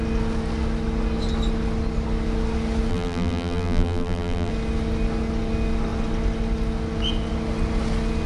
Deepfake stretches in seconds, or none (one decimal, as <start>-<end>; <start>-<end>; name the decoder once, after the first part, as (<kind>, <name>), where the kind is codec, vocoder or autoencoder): 2.9-4.5 (vocoder, BigVGAN v2)